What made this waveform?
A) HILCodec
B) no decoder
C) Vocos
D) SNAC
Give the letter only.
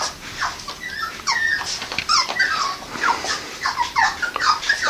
B